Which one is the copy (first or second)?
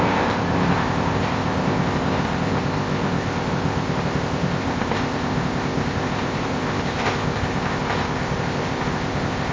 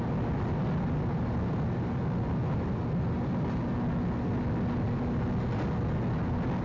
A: first